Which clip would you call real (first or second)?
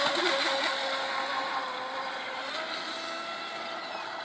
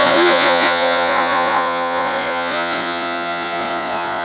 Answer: first